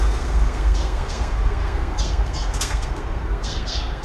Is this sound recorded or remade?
remade